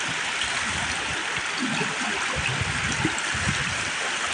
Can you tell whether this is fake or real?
real